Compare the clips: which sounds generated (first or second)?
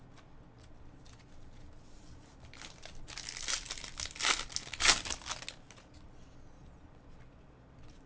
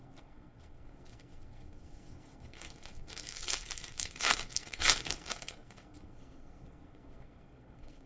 second